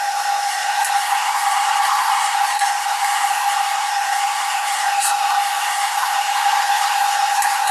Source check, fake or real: fake